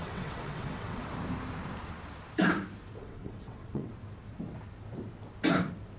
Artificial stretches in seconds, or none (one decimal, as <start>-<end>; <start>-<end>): 0.0-1.0; 3.0-3.9